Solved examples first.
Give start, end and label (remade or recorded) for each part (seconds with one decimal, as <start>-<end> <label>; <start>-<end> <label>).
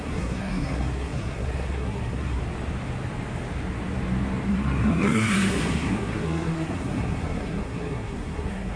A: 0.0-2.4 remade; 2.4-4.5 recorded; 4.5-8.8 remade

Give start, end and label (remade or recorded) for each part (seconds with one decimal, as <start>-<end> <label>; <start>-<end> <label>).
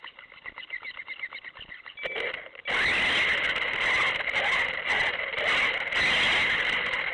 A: 0.0-7.1 recorded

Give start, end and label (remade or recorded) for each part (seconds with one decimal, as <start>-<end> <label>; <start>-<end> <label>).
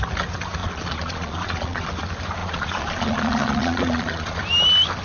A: 0.0-0.6 recorded; 0.6-1.9 remade; 1.9-2.4 recorded; 2.4-4.4 remade; 4.4-5.0 recorded